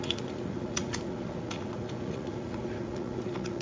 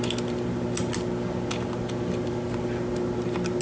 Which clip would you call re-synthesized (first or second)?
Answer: first